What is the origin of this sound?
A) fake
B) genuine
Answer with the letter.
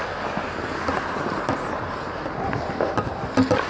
B